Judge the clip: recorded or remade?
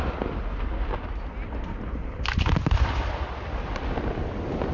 recorded